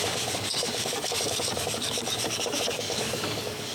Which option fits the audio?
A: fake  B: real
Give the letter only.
A